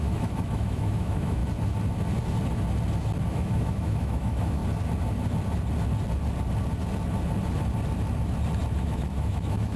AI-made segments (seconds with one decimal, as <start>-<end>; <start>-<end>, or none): 0.0-1.4; 3.3-4.6; 8.8-9.8

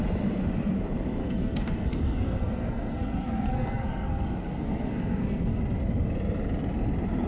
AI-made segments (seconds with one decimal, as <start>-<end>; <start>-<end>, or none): 1.2-5.6

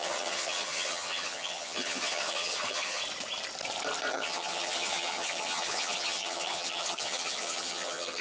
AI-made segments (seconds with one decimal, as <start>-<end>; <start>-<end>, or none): 0.0-3.0; 4.1-8.2